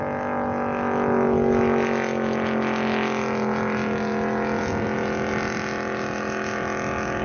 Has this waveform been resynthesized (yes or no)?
no